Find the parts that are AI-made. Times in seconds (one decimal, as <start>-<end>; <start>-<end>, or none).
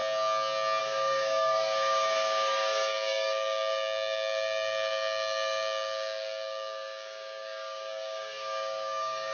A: 0.8-9.3